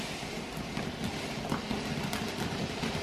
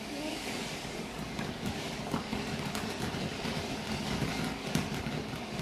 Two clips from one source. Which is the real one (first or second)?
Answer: first